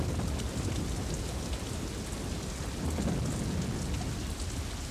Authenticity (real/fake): real